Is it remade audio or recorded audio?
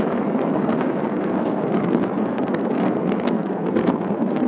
remade